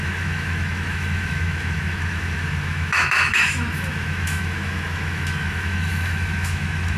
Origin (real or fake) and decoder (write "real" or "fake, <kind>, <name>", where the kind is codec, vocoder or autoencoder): fake, autoencoder, DAC-VAE